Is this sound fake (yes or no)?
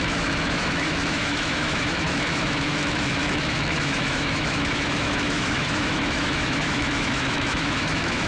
yes